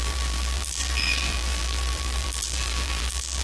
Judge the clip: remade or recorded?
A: remade